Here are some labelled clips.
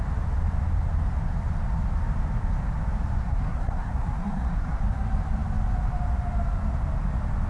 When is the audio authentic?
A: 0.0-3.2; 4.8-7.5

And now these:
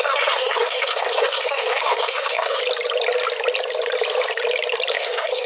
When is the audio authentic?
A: 2.6-4.9

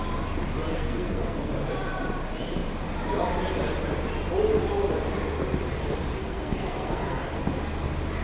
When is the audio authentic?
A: 0.0-0.7; 1.5-6.2; 7.4-8.2

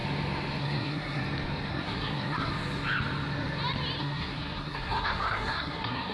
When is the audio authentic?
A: 0.0-0.6; 1.2-1.7; 2.5-4.0

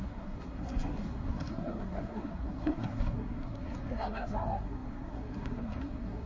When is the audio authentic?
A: none

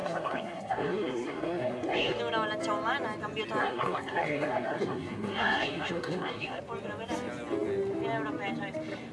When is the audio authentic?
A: 2.2-3.6; 6.6-9.1

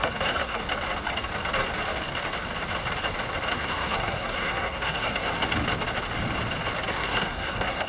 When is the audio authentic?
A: 0.6-3.5; 5.3-6.9